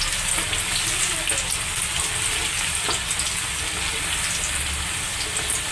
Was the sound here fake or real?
real